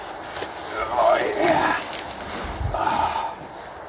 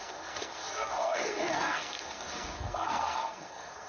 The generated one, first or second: second